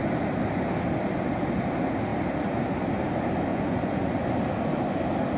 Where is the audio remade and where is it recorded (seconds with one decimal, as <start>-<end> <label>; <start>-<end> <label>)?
0.0-3.5 recorded; 3.5-4.3 remade; 4.3-5.4 recorded